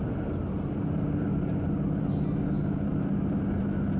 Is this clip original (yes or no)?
yes